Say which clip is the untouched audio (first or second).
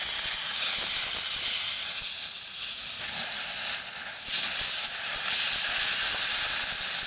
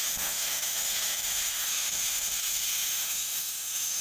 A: first